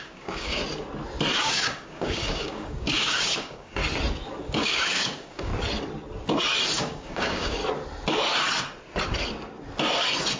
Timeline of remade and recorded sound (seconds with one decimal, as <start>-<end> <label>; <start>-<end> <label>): 0.0-0.6 remade; 0.6-1.4 recorded; 1.4-3.8 remade; 3.8-4.4 recorded; 4.4-5.5 remade; 5.5-6.8 recorded; 6.8-7.6 remade; 7.6-10.4 recorded